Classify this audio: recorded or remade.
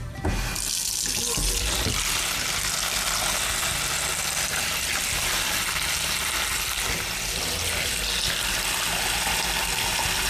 recorded